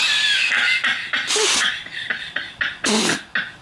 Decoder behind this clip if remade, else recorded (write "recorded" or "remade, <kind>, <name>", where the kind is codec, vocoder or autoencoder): recorded